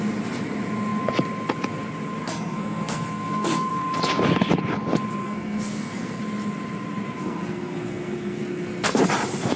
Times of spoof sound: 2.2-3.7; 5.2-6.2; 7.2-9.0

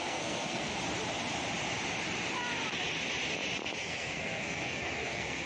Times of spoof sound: 0.0-0.7; 3.8-5.5

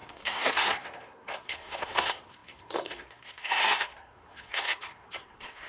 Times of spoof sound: 0.0-5.7

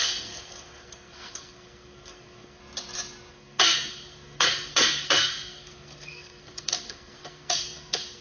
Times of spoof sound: 0.0-2.6; 3.3-8.2